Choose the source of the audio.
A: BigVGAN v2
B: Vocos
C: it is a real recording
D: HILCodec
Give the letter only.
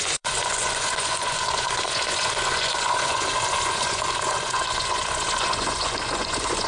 B